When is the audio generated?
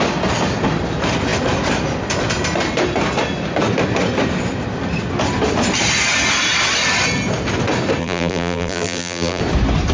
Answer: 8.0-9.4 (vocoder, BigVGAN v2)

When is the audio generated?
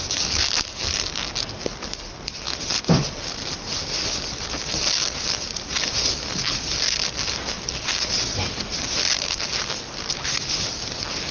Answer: 8.3-8.8 (vocoder, BigVGAN v2)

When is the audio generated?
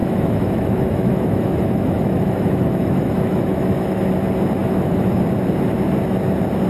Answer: 0.0-4.0 (autoencoder, DAC-VAE); 4.6-5.2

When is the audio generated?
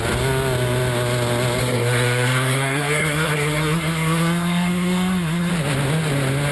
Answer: 1.6-5.5 (codec, SNAC)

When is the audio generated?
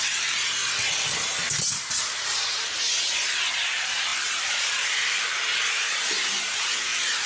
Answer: 0.0-0.6 (vocoder, BigVGAN v2); 1.7-7.3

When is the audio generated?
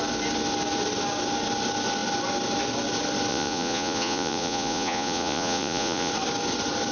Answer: 3.3-6.1 (vocoder, Vocos)